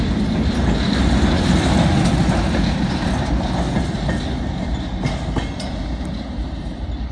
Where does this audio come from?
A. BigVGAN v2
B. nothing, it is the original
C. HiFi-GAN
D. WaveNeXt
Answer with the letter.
B